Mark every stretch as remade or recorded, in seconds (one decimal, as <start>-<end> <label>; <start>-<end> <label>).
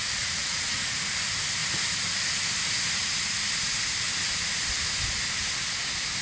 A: 0.0-1.1 remade; 1.1-6.2 recorded